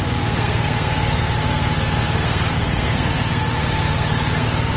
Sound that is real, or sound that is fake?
fake